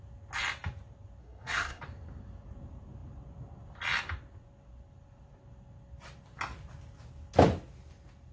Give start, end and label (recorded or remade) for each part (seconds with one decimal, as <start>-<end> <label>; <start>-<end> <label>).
0.0-1.2 recorded; 1.2-1.8 remade; 1.8-8.3 recorded